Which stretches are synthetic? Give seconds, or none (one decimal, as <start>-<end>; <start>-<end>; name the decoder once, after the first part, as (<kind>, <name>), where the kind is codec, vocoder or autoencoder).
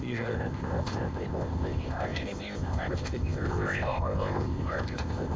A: 0.0-5.4 (codec, ZipCodec)